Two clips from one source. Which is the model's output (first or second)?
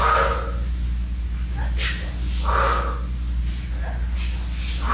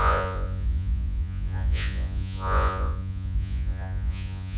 second